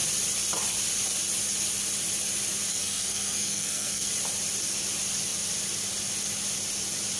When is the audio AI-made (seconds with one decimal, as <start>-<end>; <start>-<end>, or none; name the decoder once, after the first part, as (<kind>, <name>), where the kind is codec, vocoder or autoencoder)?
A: 2.7-4.1 (codec, SNAC)